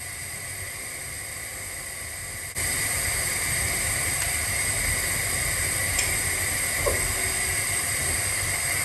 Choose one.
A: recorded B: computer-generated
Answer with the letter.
A